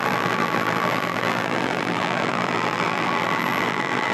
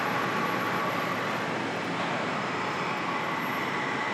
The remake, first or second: first